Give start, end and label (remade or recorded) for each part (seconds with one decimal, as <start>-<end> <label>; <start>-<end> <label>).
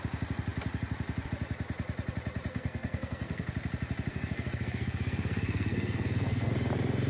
0.0-2.5 recorded; 2.5-3.5 remade; 3.5-4.1 recorded; 4.1-6.5 remade; 6.5-7.1 recorded